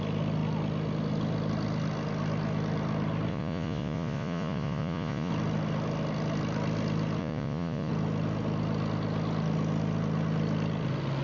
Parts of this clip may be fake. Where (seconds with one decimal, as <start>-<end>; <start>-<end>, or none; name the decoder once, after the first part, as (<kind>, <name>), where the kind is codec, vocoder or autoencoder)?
3.3-5.3 (vocoder, Vocos); 7.2-7.9